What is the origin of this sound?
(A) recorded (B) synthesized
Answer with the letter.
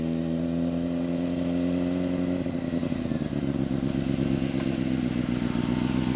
A